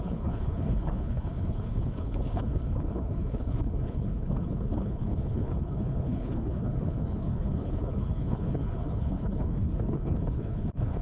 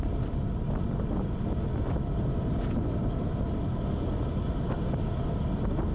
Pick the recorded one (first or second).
second